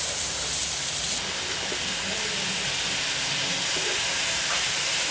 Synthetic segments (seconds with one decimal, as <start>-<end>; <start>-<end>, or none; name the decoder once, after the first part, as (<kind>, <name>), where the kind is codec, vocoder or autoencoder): 0.0-0.6 (vocoder, BigVGAN v2); 3.7-5.1